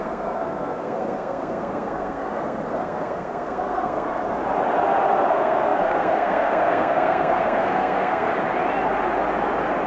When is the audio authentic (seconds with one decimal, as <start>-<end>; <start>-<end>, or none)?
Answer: 4.3-5.3; 8.3-9.9